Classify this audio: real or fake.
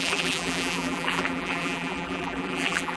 fake